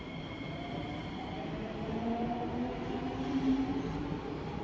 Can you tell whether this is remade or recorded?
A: remade